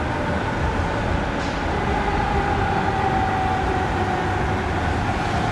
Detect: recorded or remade recorded